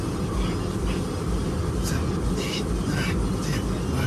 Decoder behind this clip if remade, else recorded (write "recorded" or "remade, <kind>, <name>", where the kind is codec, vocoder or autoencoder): recorded